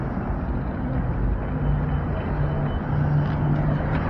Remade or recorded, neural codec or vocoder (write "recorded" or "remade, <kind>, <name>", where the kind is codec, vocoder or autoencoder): recorded